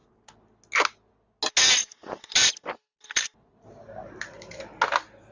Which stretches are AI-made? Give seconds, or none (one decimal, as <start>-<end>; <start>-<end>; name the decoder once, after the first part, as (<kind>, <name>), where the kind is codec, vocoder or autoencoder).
none